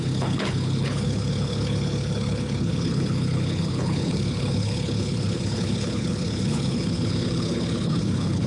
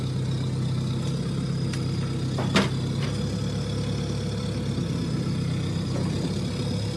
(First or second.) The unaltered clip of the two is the second